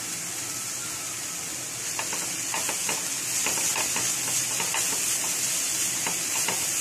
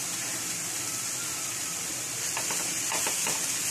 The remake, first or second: second